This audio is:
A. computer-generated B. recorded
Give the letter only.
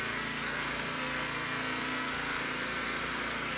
A